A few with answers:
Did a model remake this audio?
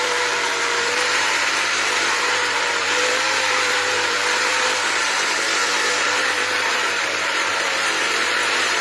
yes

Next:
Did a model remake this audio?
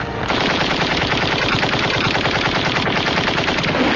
no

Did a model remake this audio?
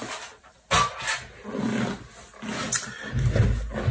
no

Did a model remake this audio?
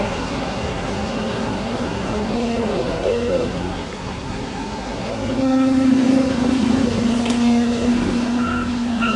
yes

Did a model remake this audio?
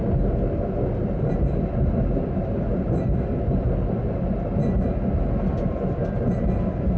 no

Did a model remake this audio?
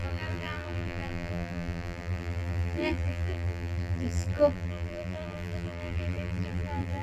yes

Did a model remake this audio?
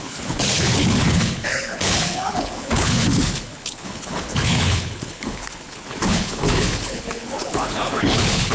yes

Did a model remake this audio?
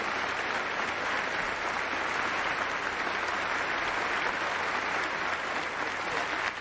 no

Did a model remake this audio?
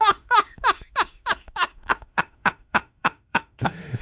yes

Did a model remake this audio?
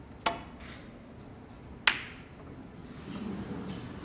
no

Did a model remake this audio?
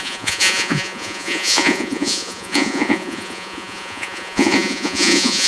yes